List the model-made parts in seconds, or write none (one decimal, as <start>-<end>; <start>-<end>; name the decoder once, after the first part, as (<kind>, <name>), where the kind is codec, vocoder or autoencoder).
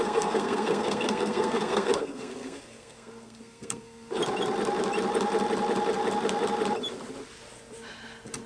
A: 0.0-4.2 (codec, SNAC)